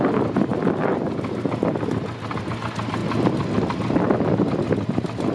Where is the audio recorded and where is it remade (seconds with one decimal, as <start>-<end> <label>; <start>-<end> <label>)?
0.0-5.3 recorded